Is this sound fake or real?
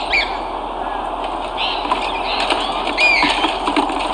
real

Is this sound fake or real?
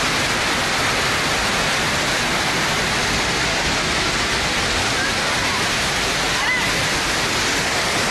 real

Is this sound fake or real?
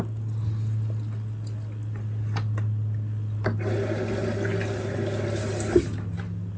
real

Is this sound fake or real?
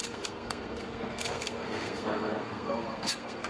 fake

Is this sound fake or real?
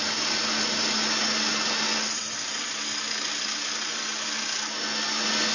real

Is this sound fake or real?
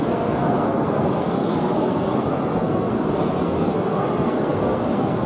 fake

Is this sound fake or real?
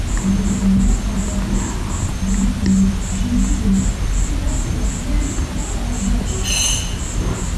real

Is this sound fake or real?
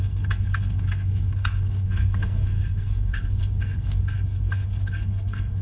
fake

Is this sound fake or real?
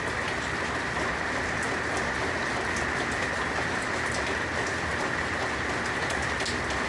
real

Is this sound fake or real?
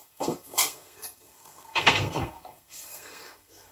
fake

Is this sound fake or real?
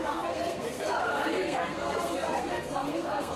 fake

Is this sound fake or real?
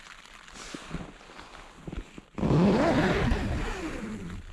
real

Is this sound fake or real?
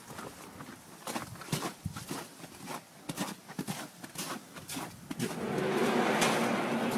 real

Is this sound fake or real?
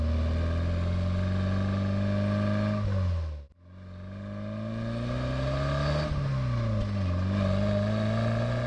real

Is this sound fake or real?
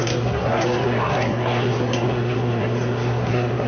fake